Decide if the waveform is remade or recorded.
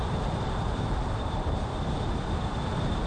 remade